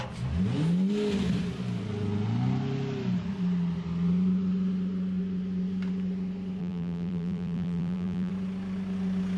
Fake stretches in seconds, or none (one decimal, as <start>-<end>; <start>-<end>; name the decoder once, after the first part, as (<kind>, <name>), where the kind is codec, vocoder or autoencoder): 6.6-8.3 (vocoder, BigVGAN v2)